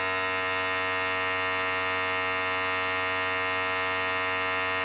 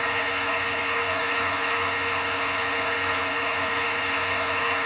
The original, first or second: first